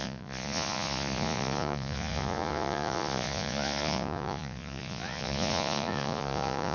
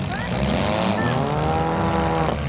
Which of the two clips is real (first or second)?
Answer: second